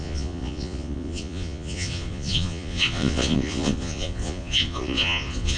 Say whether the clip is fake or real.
fake